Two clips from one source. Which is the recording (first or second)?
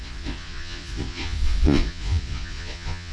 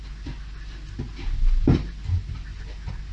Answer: second